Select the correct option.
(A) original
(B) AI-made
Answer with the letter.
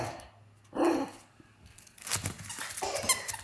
A